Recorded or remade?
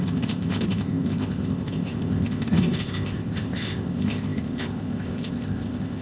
remade